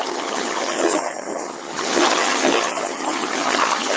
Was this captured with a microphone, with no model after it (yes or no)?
no